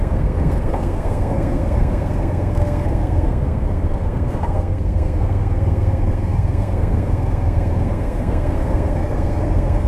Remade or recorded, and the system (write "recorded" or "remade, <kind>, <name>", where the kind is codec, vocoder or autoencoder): remade, codec, SNAC